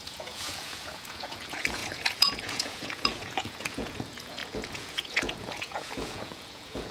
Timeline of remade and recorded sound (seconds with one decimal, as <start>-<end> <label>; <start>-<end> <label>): 0.0-6.9 remade